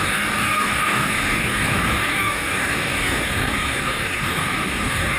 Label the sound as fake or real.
fake